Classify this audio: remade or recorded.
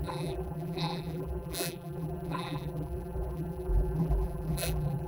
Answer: remade